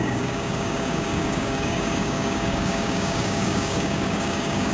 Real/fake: fake